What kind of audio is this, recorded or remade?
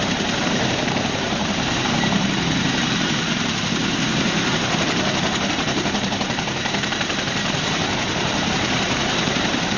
remade